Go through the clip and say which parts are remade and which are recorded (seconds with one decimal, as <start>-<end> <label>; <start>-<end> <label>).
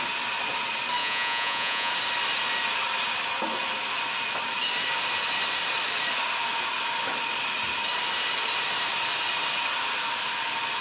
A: 0.0-1.0 recorded; 1.0-1.9 remade; 1.9-10.8 recorded